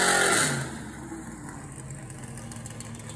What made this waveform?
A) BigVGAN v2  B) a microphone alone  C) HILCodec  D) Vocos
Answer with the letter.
B